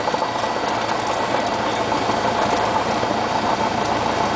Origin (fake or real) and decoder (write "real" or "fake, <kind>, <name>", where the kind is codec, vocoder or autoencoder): real